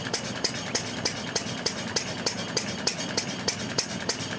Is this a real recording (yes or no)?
yes